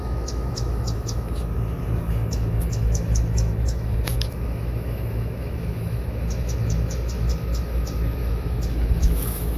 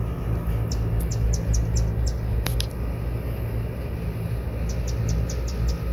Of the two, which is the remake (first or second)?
first